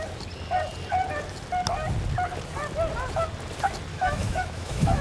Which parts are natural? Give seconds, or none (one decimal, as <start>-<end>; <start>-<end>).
0.0-3.9